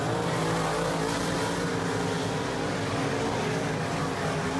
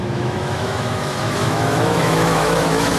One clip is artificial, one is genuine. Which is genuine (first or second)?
first